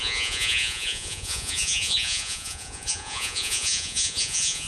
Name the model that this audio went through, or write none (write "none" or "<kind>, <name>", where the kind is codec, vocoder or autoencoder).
vocoder, Vocos